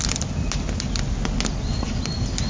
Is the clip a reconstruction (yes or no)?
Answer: no